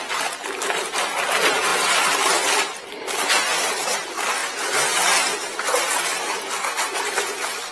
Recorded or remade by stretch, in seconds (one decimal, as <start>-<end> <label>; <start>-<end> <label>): 0.0-7.7 remade